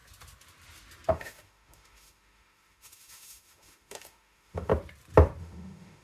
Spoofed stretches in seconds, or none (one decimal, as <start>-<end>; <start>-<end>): 1.1-4.7; 5.4-6.0